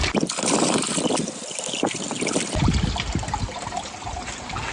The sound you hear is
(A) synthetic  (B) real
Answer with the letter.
B